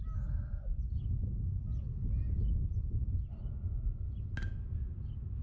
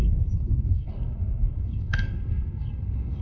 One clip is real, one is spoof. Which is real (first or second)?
first